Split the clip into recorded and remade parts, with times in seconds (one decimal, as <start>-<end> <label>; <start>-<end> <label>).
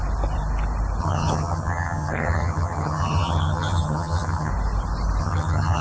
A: 0.0-1.0 recorded; 1.0-4.5 remade; 4.5-5.2 recorded; 5.2-5.8 remade